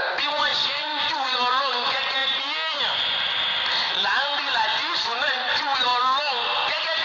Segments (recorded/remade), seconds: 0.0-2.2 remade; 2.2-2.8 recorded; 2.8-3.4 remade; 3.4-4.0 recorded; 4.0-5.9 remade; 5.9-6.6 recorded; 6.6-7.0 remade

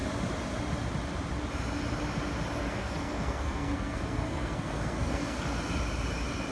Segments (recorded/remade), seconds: 0.0-2.6 recorded; 2.6-5.6 remade; 5.6-6.5 recorded

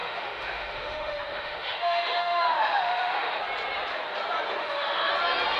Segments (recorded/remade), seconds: 0.0-3.4 remade; 3.4-4.6 recorded; 4.6-5.1 remade; 5.1-5.6 recorded

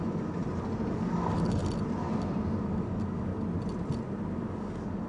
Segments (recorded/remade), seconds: 0.0-0.4 remade; 0.4-0.9 recorded; 0.9-1.6 remade; 1.6-2.6 recorded; 2.6-3.3 remade; 3.3-4.4 recorded; 4.4-5.1 remade

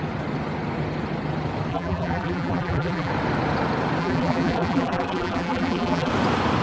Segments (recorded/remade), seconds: 0.0-1.7 recorded; 1.7-3.1 remade; 3.1-4.0 recorded; 4.0-6.1 remade; 6.1-6.6 recorded